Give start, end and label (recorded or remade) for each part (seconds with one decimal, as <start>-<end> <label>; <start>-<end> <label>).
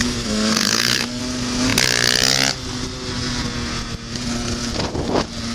0.0-1.2 remade; 1.2-5.5 recorded